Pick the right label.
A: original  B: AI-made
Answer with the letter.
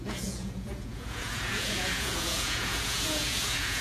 B